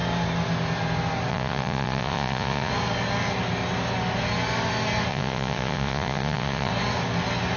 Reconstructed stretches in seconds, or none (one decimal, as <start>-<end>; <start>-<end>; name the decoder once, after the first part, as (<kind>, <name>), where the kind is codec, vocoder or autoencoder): 1.3-2.7 (vocoder, Vocos); 5.1-6.7